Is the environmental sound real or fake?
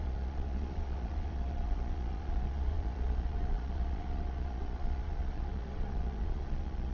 fake